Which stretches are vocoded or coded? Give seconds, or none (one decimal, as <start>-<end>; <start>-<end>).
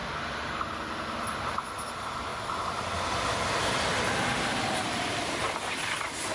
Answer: none